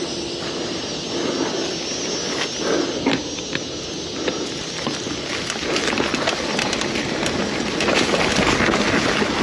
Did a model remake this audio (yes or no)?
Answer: no